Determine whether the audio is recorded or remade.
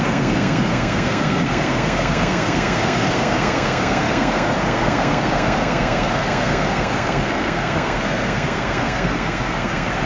remade